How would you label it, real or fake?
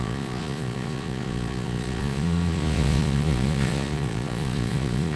fake